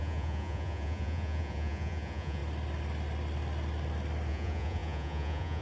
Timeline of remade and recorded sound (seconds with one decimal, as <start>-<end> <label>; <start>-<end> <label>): 0.0-2.4 remade; 2.4-4.3 recorded; 4.3-5.6 remade